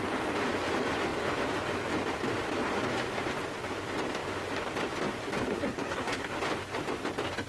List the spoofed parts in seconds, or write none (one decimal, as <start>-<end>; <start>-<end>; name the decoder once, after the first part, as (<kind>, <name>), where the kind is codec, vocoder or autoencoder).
5.5-6.3 (codec, SNAC)